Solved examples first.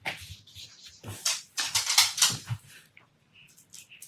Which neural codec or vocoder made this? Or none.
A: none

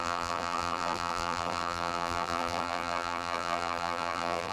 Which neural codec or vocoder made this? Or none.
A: vocoder, BigVGAN v2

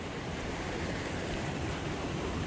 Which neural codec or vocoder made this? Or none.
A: vocoder, BigVGAN v2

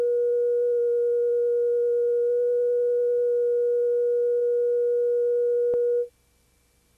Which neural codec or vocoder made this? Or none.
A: none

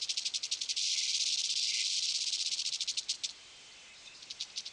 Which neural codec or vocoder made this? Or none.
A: none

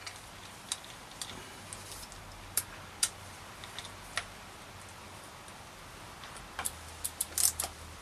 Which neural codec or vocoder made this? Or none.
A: none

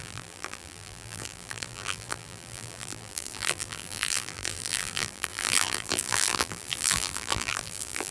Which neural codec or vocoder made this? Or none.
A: vocoder, BigVGAN v2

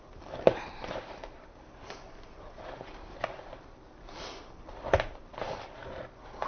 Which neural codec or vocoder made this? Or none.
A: vocoder, BigVGAN v2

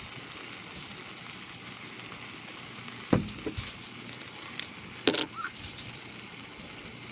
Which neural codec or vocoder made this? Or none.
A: none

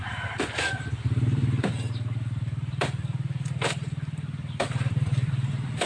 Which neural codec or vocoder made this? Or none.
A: vocoder, BigVGAN v2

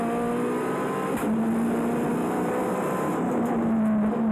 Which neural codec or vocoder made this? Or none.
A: none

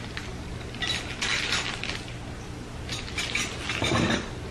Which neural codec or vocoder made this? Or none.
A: none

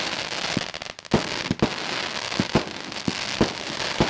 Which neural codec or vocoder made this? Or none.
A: none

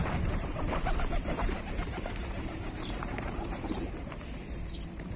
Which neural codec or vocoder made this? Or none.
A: vocoder, BigVGAN v2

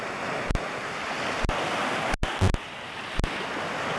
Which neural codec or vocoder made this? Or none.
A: none